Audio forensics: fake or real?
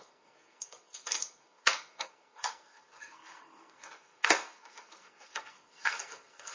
fake